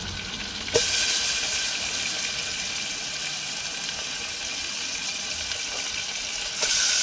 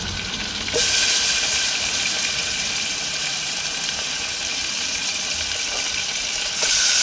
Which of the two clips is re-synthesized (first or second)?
second